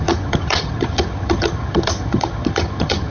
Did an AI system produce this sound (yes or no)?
yes